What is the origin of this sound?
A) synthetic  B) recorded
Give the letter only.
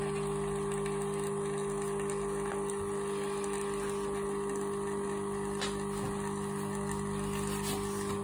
B